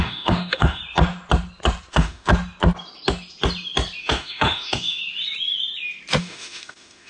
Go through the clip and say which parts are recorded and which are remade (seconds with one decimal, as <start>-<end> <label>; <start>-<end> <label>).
0.0-0.8 remade; 0.8-1.9 recorded; 1.9-2.3 remade; 2.3-4.0 recorded; 4.0-5.0 remade; 5.0-6.2 recorded; 6.2-7.1 remade